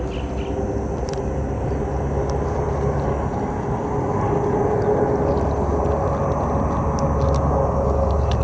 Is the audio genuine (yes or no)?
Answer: yes